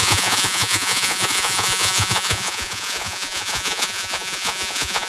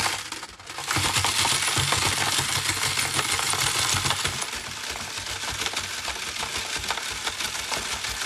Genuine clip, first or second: second